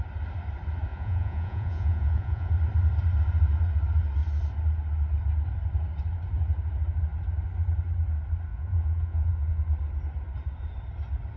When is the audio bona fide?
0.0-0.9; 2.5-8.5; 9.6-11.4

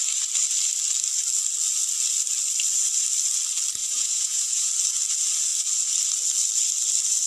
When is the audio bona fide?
0.0-3.8; 4.7-7.3

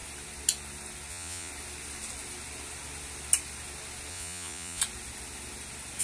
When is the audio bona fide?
0.0-1.1; 1.5-4.1; 4.8-6.0

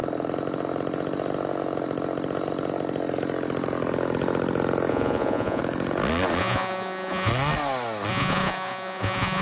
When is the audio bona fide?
0.0-4.9; 5.6-6.4; 7.3-8.1

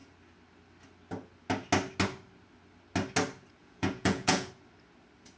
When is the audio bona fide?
0.0-3.6; 4.5-5.4

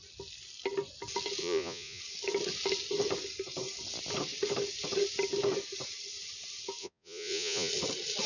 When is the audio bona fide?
0.0-1.4; 2.0-6.8; 7.7-8.3

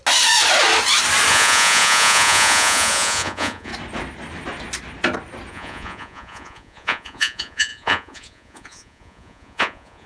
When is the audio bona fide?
0.0-1.3; 3.7-5.5